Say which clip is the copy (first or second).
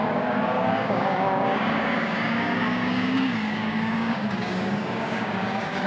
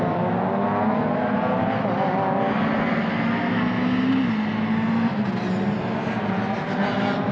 first